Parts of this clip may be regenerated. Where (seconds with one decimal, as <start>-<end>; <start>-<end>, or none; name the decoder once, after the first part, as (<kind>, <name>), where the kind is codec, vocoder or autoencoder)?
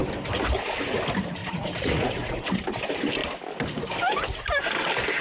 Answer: 1.4-2.5 (vocoder, Vocos)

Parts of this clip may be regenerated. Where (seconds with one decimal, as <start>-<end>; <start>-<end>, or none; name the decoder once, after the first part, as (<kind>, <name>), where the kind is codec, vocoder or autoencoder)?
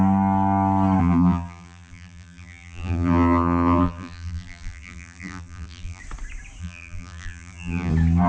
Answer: 1.0-6.0 (vocoder, BigVGAN v2); 6.6-7.9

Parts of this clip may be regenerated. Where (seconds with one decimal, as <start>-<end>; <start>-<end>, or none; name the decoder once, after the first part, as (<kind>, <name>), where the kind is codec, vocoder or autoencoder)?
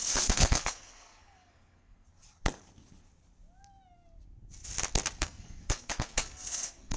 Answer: 0.0-2.1 (codec, SNAC); 5.2-7.0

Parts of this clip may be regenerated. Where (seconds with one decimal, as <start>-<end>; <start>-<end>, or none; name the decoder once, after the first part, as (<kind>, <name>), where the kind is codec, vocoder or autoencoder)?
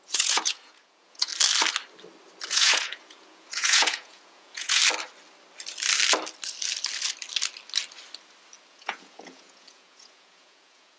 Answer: 0.0-1.3 (vocoder, Vocos); 2.5-4.8; 8.7-11.0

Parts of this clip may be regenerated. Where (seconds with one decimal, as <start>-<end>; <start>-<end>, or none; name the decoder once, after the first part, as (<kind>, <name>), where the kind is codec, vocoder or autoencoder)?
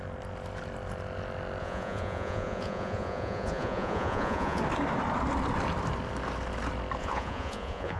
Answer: 1.6-4.6 (vocoder, Vocos); 7.0-8.0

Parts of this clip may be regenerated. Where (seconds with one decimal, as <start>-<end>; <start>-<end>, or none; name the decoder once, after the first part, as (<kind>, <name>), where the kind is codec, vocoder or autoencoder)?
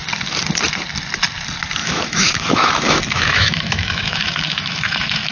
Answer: 1.8-5.3 (autoencoder, DAC-VAE)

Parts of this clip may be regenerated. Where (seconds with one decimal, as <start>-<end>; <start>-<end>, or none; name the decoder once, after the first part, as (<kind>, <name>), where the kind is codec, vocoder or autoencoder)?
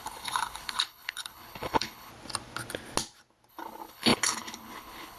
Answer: 0.0-2.1 (codec, HILCodec); 3.5-5.2